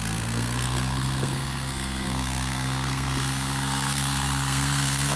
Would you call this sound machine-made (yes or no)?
yes